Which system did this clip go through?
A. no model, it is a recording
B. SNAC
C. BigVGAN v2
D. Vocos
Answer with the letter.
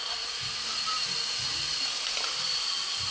A